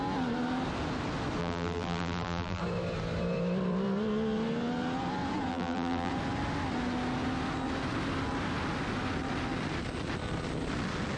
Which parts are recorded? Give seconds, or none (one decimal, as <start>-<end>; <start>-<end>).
0.0-1.4; 2.6-5.5; 6.1-11.2